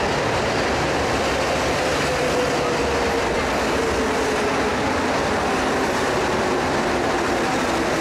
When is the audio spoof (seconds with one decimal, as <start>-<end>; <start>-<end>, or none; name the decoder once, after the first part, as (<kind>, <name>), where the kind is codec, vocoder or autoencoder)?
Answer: none